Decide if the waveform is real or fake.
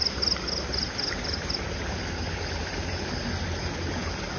real